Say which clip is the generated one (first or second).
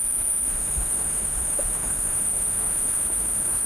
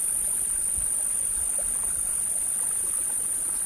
first